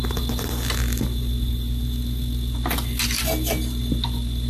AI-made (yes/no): no